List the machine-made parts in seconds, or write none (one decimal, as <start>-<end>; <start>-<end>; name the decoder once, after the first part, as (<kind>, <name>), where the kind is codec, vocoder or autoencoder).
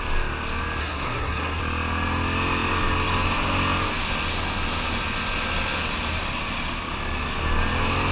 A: 0.8-1.6 (codec, SNAC)